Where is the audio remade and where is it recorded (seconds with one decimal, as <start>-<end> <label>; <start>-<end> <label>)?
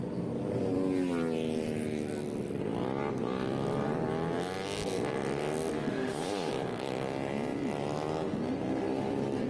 0.0-5.9 recorded; 5.9-6.5 remade; 6.5-9.5 recorded